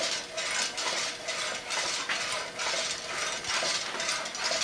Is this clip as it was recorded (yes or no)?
yes